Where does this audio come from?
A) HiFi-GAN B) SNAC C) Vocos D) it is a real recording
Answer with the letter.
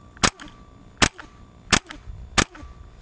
D